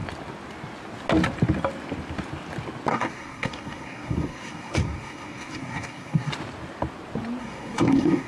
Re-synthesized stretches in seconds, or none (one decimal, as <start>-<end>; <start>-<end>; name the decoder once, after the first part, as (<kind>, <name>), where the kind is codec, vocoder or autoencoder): 2.9-6.3 (codec, SNAC); 7.4-8.3

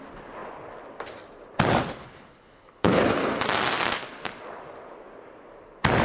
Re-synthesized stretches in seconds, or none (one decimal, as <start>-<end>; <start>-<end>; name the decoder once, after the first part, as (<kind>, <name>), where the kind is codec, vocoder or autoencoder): 2.0-3.0 (codec, HILCodec)

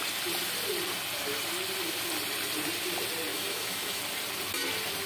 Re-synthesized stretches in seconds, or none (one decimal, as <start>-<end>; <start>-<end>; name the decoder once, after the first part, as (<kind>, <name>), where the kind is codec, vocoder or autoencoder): 3.3-4.0 (autoencoder, DAC-VAE)

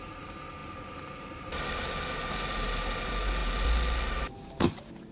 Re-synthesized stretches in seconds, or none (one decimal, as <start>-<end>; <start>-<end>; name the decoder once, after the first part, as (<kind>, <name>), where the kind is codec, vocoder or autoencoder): none

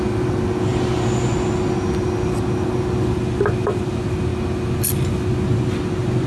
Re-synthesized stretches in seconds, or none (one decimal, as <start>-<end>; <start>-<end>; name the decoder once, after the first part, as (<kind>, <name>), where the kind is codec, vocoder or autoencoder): none

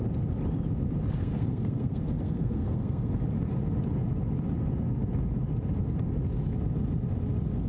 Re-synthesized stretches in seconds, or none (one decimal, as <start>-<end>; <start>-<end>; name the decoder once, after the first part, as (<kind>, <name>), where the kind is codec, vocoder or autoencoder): 1.2-3.1 (codec, SNAC)

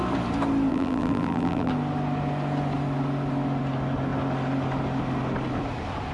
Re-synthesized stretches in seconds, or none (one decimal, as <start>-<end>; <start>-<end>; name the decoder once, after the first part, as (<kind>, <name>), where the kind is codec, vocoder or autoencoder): 0.7-1.7 (vocoder, BigVGAN v2)